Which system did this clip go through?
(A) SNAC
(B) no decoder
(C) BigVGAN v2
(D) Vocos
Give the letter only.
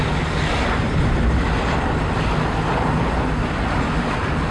B